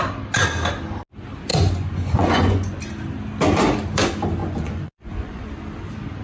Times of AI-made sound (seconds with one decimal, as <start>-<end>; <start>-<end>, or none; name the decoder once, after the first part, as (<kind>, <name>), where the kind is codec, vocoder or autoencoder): 1.5-2.8 (vocoder, Vocos); 4.4-5.5